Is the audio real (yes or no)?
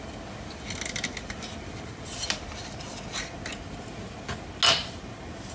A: yes